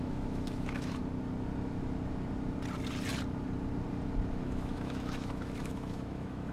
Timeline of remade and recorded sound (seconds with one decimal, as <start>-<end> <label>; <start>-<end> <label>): 0.0-1.0 remade; 1.0-4.3 recorded; 4.3-6.5 remade